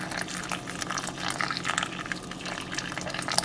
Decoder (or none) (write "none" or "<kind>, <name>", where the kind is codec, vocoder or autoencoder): none